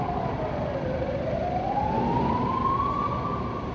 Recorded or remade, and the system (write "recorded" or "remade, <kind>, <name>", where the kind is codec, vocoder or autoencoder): recorded